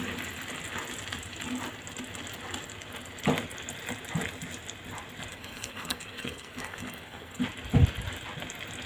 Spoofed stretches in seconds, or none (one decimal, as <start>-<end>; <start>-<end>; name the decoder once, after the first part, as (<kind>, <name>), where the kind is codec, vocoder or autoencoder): 5.3-7.4 (codec, SNAC)